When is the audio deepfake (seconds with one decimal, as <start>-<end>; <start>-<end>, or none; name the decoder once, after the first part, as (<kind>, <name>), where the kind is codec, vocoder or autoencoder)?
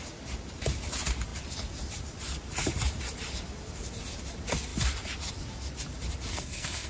6.3-6.9 (codec, SNAC)